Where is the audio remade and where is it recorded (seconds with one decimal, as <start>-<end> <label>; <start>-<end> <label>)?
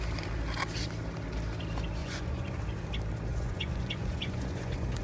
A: 0.0-2.0 recorded; 2.0-2.6 remade; 2.6-3.3 recorded; 3.3-5.0 remade